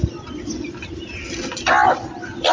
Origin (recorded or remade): recorded